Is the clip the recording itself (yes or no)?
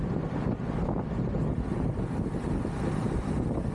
yes